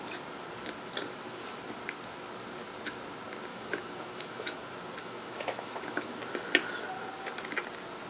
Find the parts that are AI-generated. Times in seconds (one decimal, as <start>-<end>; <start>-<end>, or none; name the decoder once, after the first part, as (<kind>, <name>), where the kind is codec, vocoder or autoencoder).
3.5-4.6 (autoencoder, DAC-VAE); 5.0-6.2